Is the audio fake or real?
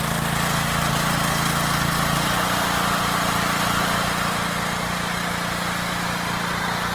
real